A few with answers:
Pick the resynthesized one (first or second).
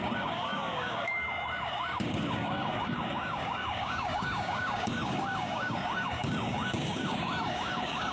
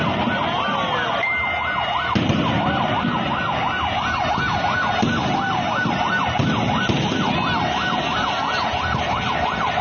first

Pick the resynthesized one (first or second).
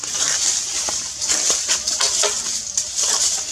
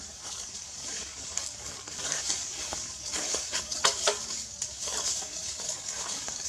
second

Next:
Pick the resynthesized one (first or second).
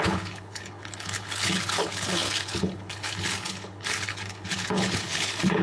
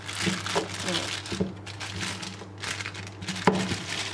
first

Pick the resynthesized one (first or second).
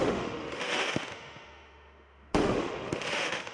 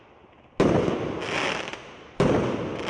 first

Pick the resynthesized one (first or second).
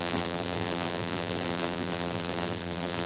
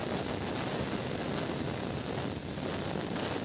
first